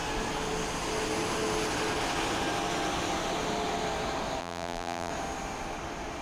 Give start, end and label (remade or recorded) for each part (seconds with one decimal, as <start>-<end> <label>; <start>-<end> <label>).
0.0-4.4 recorded; 4.4-5.1 remade; 5.1-6.2 recorded